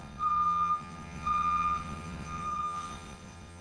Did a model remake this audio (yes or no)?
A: yes